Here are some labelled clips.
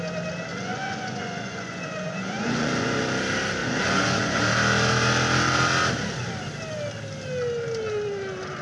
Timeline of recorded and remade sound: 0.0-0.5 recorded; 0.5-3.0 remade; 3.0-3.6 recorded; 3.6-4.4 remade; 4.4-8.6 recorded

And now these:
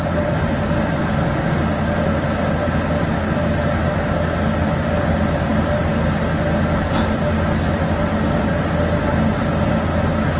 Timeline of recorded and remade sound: 0.0-10.4 recorded

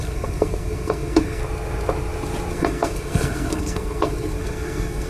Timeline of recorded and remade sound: 0.0-1.4 remade; 1.4-2.5 recorded; 2.5-5.1 remade

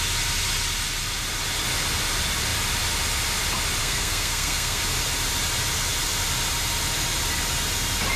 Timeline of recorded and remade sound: 0.0-3.8 recorded; 3.8-4.8 remade; 4.8-8.2 recorded